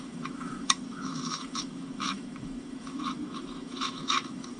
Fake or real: fake